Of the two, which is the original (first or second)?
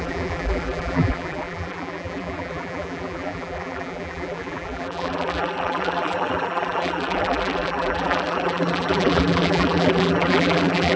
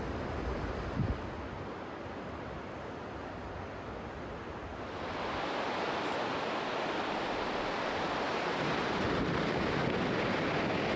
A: second